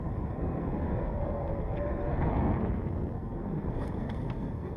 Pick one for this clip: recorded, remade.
remade